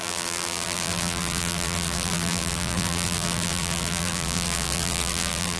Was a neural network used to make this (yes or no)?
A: yes